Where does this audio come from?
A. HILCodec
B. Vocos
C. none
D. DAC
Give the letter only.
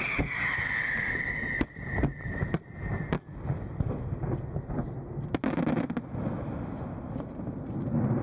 C